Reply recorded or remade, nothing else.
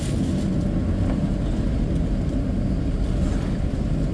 recorded